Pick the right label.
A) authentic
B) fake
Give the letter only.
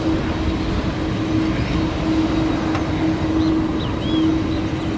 A